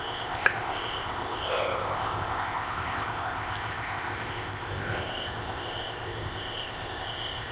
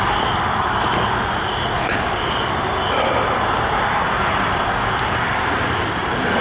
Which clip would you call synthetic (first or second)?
first